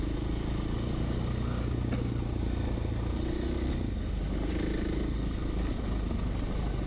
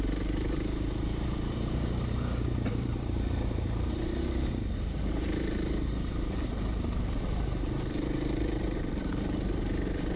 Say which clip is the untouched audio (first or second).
first